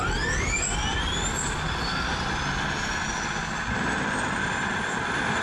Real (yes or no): yes